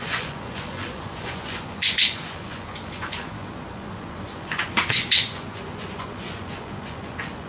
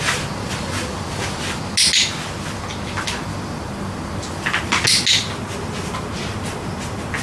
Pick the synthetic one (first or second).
first